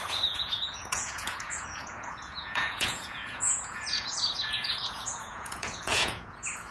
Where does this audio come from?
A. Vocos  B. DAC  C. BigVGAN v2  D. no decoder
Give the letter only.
A